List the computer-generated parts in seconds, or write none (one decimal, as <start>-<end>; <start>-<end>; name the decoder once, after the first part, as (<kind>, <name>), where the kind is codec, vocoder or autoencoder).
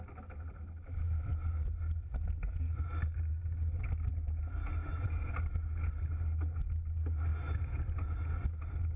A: none